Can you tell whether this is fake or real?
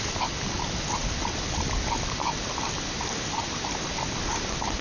real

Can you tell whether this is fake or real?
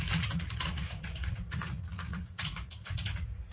fake